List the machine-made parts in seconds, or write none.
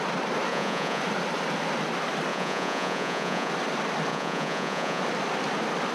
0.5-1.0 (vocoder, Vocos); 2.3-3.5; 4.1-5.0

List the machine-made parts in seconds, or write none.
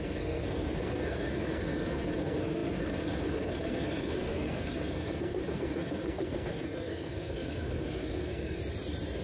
0.0-8.6 (codec, SNAC)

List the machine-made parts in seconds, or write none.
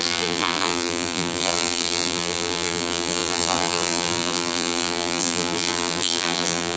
0.0-6.8 (vocoder, BigVGAN v2)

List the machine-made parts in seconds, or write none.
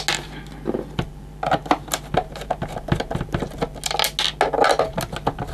none